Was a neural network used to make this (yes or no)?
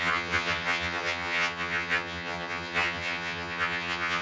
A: yes